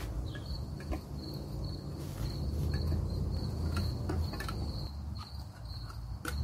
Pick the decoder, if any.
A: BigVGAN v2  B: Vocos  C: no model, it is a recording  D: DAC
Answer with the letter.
C